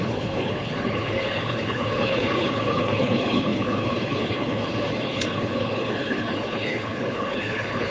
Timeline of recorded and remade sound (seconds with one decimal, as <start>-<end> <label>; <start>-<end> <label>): 0.0-7.9 remade